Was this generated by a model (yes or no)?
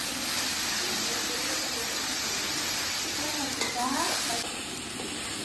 yes